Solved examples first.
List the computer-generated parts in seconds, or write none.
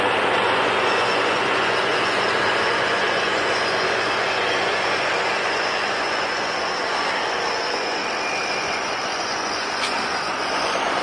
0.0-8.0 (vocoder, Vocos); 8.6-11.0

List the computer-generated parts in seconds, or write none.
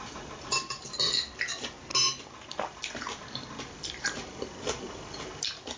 none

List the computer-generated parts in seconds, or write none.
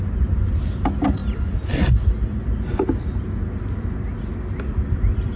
none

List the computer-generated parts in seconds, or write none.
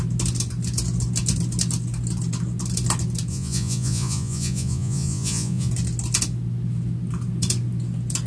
3.3-5.7 (vocoder, Vocos)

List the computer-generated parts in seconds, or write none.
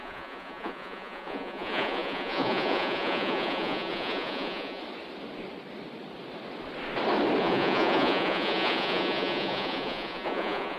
0.0-4.8 (vocoder, Vocos); 7.4-10.8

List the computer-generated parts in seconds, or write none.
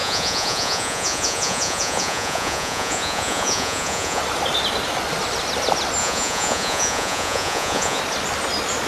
0.0-4.2 (vocoder, Vocos); 6.0-8.0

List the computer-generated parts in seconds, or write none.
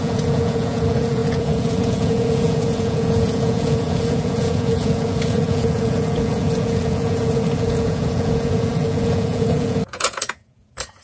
0.0-11.0 (vocoder, Vocos)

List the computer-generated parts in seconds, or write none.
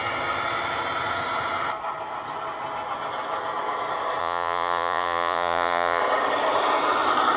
4.2-6.0 (vocoder, Vocos)